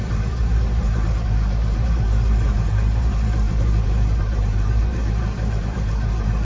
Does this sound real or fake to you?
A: fake